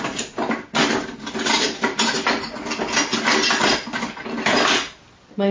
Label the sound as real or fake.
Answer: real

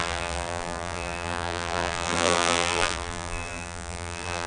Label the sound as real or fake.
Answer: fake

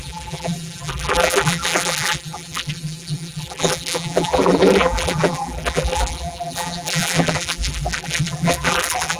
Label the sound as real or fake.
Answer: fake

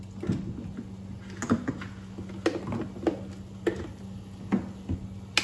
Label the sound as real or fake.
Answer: real